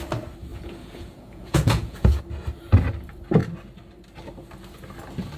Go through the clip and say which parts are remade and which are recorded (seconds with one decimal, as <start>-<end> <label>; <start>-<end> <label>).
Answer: 0.0-0.5 recorded; 0.5-2.2 remade; 2.2-5.4 recorded